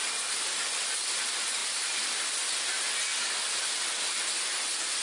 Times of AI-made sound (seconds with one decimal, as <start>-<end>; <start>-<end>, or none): none